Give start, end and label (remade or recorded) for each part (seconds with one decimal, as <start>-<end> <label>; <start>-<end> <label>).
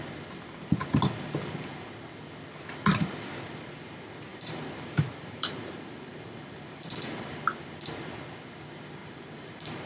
0.0-4.3 recorded; 4.3-7.4 remade; 7.4-9.0 recorded; 9.0-9.9 remade